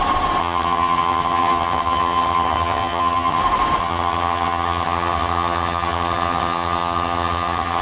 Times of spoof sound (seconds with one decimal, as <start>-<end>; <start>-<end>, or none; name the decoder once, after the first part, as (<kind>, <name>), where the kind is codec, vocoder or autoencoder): 0.4-3.4 (vocoder, HiFi-GAN); 3.8-7.8